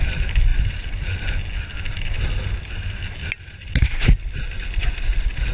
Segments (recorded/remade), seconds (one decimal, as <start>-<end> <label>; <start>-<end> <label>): 0.0-5.5 recorded